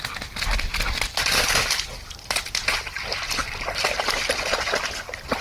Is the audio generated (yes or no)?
no